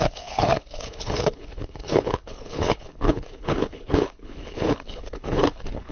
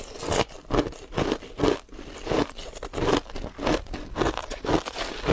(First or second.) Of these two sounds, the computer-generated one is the first